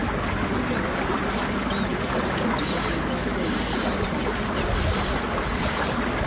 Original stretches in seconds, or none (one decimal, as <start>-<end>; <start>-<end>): 0.0-6.3